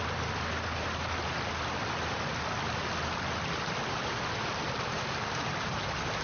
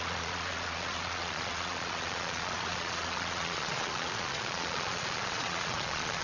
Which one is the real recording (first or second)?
first